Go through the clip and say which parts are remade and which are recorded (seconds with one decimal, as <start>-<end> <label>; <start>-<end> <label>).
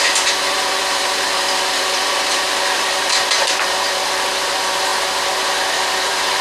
0.0-4.9 remade; 4.9-5.4 recorded; 5.4-6.4 remade